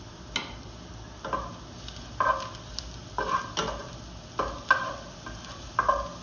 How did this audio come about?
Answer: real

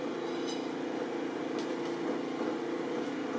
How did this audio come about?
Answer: real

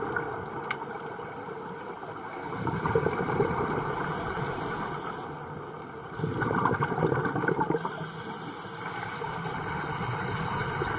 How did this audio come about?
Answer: real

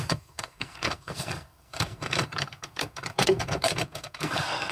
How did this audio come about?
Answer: fake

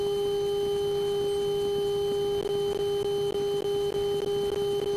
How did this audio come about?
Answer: real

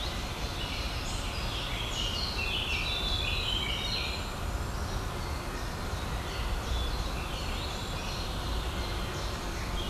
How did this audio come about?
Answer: real